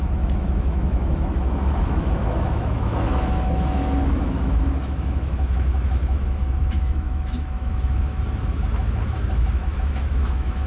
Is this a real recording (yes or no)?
no